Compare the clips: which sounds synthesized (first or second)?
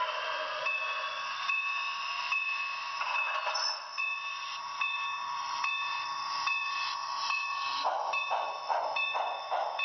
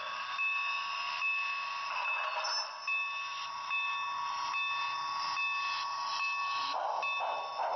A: first